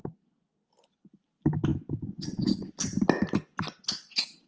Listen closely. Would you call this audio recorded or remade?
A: recorded